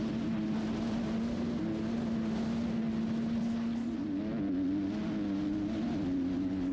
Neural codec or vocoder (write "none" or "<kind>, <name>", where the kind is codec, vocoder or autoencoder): none